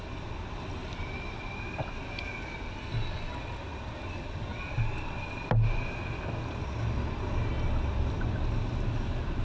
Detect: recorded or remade recorded